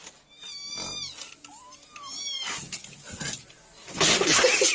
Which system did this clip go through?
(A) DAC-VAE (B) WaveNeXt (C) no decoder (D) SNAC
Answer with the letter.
C